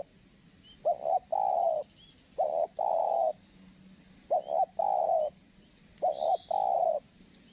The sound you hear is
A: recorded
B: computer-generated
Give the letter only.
A